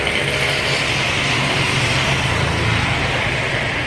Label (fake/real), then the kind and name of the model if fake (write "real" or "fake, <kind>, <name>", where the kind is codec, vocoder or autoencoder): real